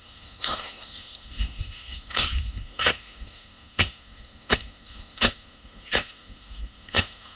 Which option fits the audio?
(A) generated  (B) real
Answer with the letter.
A